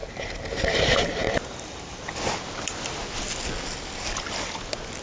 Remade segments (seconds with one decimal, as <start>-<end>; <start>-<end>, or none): 0.0-2.1